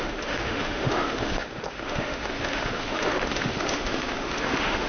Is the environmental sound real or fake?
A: fake